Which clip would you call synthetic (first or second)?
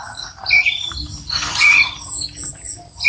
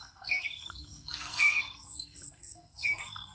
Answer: second